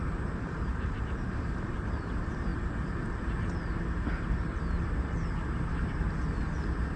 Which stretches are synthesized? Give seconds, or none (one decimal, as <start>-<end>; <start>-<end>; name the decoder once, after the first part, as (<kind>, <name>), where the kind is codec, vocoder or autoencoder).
0.0-2.5 (vocoder, BigVGAN v2)